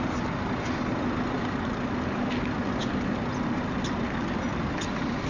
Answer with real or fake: real